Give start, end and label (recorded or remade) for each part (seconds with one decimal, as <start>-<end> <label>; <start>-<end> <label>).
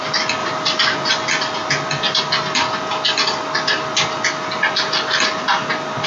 0.0-0.4 recorded; 0.4-1.1 remade; 1.1-6.1 recorded